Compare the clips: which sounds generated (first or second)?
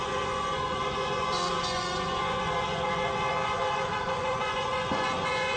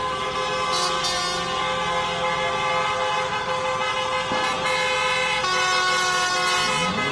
first